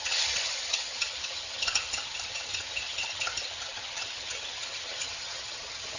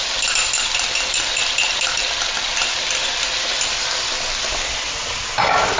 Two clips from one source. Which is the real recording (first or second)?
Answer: second